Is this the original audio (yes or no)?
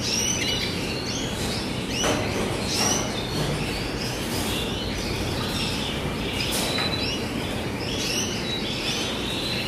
no